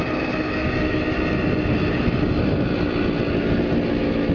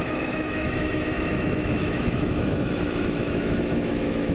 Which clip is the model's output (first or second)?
second